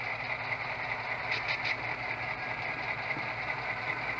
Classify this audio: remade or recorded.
recorded